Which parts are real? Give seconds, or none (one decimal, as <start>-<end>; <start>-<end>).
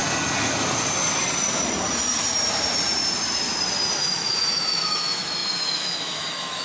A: 0.0-4.0